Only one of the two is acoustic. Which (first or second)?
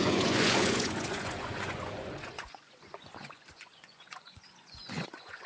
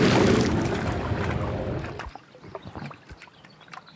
second